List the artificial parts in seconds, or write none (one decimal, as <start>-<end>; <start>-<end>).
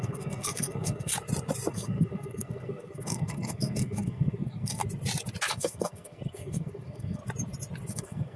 0.0-1.1; 1.7-4.8; 5.5-7.2; 7.9-8.4